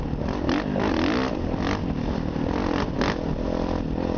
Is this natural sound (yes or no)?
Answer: yes